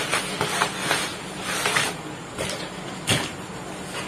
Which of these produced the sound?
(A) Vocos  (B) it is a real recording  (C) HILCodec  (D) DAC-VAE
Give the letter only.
B